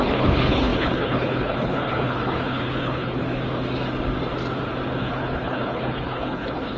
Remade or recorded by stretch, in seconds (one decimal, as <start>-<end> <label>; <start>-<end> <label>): 0.0-3.2 remade; 3.2-5.0 recorded; 5.0-6.8 remade